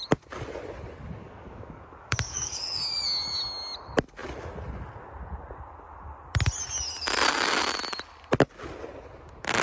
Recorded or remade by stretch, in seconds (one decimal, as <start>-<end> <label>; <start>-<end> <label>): 0.0-1.2 recorded; 1.2-2.8 remade; 2.8-9.6 recorded

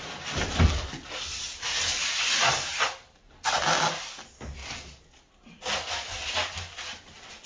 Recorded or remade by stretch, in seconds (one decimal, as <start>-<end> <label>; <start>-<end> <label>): 0.0-7.5 recorded

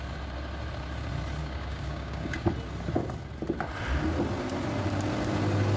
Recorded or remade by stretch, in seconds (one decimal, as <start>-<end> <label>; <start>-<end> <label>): 0.0-1.4 recorded; 1.4-2.5 remade; 2.5-5.8 recorded

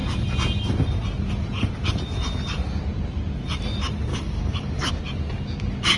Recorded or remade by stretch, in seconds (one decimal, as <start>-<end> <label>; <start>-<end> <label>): 0.0-4.1 recorded; 4.1-4.9 remade; 4.9-6.0 recorded

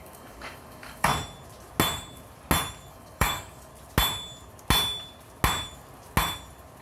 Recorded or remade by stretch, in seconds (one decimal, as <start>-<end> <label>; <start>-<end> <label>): 0.0-1.1 remade; 1.1-2.9 recorded; 2.9-3.7 remade; 3.7-6.8 recorded